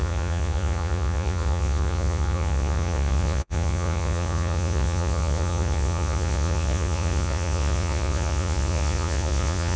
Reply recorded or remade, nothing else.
remade